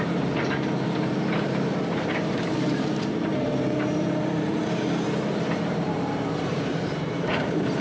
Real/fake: fake